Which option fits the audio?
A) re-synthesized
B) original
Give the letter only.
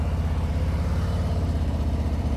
A